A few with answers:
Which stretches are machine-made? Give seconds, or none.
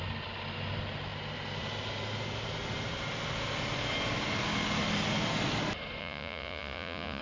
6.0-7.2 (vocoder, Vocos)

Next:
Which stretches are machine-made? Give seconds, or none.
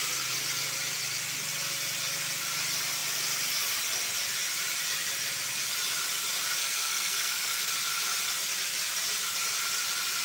6.6-7.7 (codec, SNAC)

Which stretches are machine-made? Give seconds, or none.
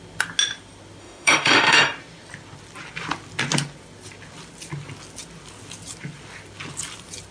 1.0-1.8 (autoencoder, DAC-VAE)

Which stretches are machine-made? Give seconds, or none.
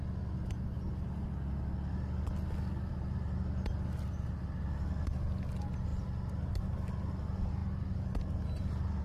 none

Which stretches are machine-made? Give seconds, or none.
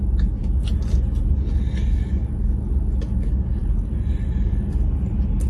3.6-4.2 (vocoder, BigVGAN v2)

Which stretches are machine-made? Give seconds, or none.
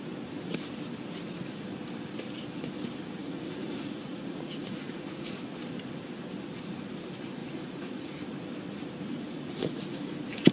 3.2-5.3 (vocoder, Vocos); 7.4-8.2; 9.1-10.1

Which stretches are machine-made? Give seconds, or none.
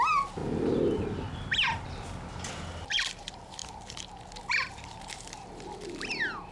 0.0-0.4 (vocoder, BigVGAN v2); 2.5-6.5